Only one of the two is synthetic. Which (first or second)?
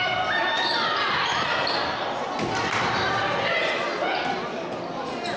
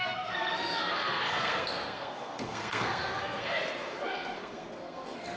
second